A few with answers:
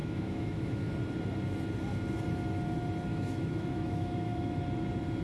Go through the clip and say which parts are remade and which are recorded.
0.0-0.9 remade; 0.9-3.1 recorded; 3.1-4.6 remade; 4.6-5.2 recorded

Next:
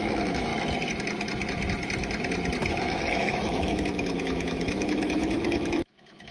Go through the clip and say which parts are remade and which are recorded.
0.0-0.5 remade; 0.5-2.7 recorded; 2.7-6.3 remade

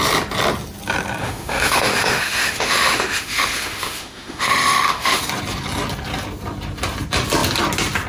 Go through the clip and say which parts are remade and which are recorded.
0.0-1.2 recorded; 1.2-5.2 remade; 5.2-8.1 recorded

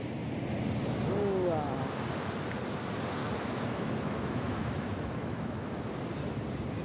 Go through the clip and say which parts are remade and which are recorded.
0.0-3.2 recorded; 3.2-5.8 remade; 5.8-6.8 recorded

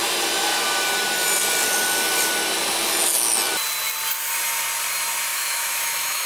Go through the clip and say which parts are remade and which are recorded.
0.0-5.3 recorded; 5.3-6.3 remade

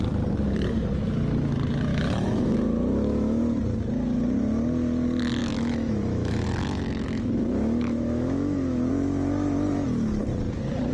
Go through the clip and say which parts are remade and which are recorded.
0.0-1.9 recorded; 1.9-3.4 remade; 3.4-5.4 recorded; 5.4-8.9 remade; 8.9-10.9 recorded

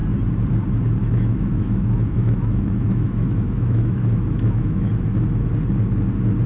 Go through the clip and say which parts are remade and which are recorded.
0.0-1.0 recorded; 1.0-4.9 remade; 4.9-6.5 recorded

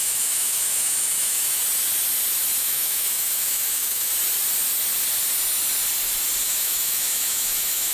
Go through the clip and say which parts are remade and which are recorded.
0.0-1.6 remade; 1.6-2.6 recorded; 2.6-4.1 remade; 4.1-6.4 recorded; 6.4-7.9 remade